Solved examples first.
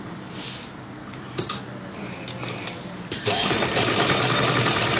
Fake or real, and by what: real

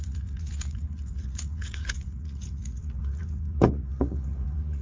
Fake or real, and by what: fake, vocoder, Vocos